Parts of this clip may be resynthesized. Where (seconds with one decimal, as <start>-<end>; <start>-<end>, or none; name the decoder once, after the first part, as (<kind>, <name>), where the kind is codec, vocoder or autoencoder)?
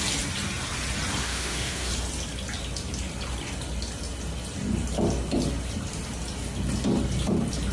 1.2-1.9 (autoencoder, DAC-VAE)